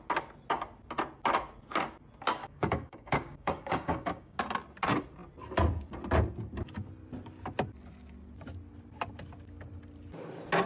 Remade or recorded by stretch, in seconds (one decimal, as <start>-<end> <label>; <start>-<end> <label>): 0.0-2.4 recorded; 2.4-4.4 remade; 4.4-10.7 recorded